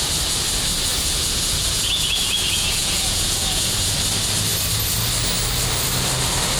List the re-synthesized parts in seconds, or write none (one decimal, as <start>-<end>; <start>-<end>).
0.9-3.9